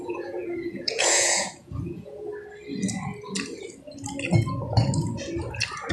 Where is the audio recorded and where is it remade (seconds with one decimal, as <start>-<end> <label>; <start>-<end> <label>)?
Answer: 0.0-2.3 remade; 2.3-5.9 recorded